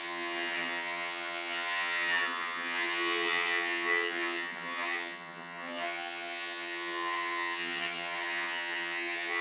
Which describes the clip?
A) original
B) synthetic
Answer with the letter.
B